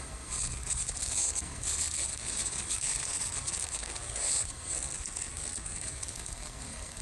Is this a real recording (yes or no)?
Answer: no